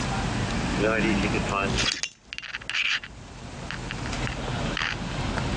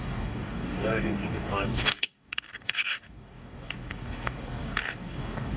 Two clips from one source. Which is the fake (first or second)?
second